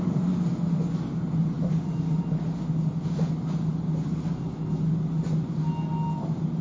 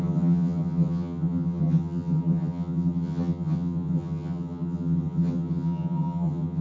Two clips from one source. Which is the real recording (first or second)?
first